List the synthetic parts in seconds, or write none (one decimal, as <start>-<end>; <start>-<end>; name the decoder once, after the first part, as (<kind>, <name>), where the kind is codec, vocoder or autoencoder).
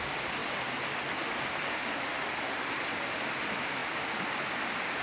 none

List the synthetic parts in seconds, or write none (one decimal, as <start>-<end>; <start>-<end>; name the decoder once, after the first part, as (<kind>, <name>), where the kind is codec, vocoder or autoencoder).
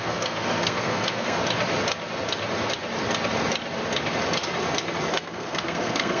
0.0-1.4 (codec, SNAC); 5.1-6.2